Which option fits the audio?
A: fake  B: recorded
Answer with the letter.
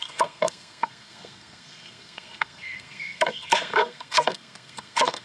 A